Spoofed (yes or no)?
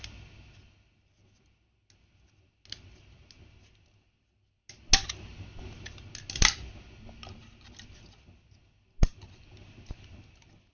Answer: no